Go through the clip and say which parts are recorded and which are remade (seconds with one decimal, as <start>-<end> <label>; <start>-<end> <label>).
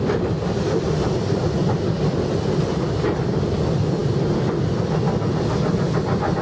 0.0-6.4 recorded